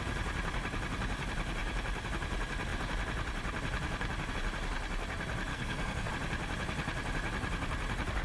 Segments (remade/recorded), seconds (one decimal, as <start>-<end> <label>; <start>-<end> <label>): 0.0-5.5 recorded; 5.5-6.1 remade; 6.1-8.2 recorded